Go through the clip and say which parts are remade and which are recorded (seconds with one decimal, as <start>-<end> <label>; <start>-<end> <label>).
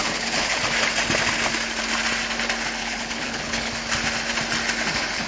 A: 0.0-0.6 remade; 0.6-2.8 recorded; 2.8-3.7 remade; 3.7-5.3 recorded